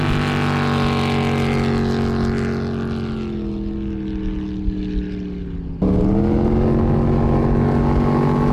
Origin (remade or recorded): recorded